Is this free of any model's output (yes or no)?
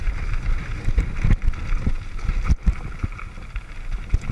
yes